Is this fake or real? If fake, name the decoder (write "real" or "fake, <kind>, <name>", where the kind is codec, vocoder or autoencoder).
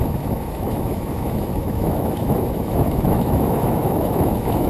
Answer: fake, autoencoder, DAC-VAE